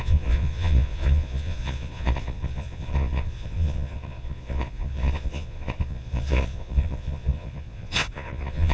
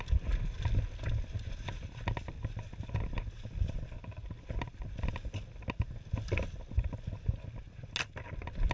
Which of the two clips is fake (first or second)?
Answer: first